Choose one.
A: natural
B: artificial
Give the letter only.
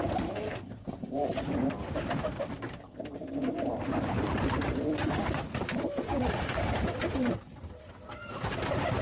B